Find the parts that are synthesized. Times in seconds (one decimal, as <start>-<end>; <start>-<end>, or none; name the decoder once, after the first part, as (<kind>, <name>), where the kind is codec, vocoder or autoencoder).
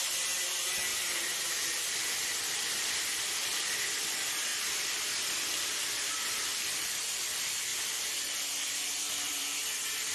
0.0-4.5 (vocoder, BigVGAN v2); 5.0-6.5; 7.1-10.1